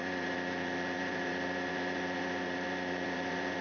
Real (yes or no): no